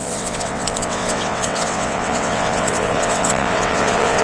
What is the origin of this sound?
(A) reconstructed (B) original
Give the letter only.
A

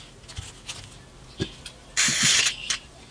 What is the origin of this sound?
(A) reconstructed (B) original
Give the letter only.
B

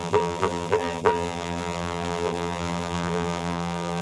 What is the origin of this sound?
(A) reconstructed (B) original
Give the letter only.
A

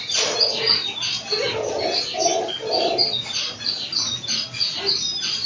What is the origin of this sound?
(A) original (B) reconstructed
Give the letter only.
A